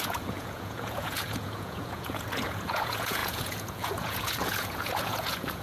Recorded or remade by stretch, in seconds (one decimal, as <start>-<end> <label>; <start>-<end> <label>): 0.0-5.6 remade